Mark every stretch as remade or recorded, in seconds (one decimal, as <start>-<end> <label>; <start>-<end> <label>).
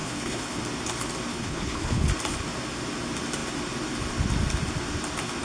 0.0-0.6 remade; 0.6-1.3 recorded; 1.3-2.1 remade; 2.1-5.4 recorded